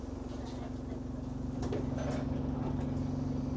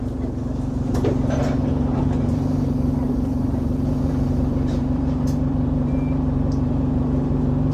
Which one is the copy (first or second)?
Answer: second